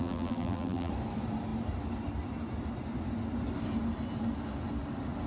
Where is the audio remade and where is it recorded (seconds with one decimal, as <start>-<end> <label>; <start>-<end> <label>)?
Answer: 0.0-0.9 remade; 0.9-5.3 recorded